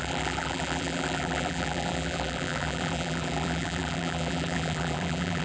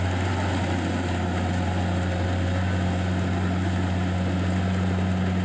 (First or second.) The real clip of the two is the second